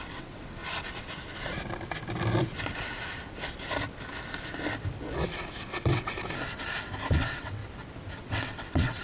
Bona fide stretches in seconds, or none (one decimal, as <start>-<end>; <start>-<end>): 0.6-5.6; 6.1-7.1; 7.6-8.2